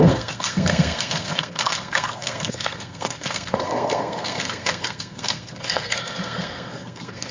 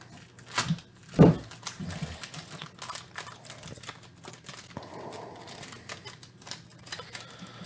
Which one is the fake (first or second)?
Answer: first